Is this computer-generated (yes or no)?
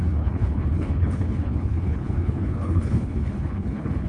yes